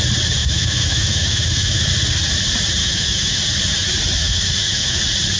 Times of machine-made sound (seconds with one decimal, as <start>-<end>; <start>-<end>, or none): 0.4-1.9; 2.8-3.4; 4.2-5.0